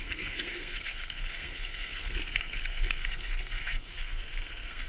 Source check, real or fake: fake